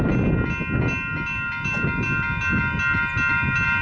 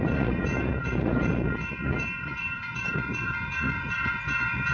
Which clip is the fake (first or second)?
second